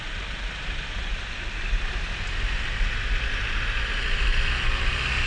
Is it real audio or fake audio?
real